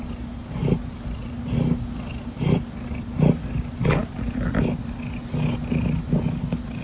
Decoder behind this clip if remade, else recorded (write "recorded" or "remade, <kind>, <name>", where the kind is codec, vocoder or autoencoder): recorded